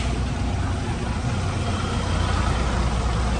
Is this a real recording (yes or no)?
yes